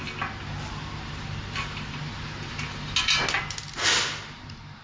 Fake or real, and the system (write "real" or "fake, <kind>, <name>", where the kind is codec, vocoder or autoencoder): real